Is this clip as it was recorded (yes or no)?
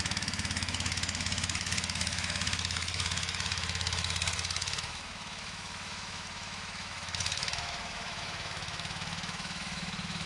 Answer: no